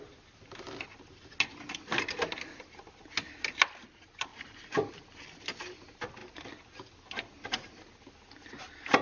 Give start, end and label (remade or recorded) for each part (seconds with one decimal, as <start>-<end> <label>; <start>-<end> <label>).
0.0-4.3 recorded; 4.3-4.9 remade; 4.9-9.0 recorded